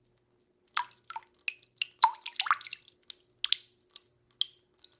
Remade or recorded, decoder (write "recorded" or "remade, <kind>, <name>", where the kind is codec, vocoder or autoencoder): recorded